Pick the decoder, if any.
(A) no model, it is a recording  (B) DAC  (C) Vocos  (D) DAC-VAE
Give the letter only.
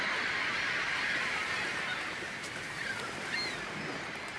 A